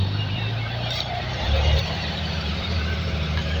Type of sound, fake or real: fake